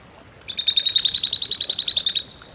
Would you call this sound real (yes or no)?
yes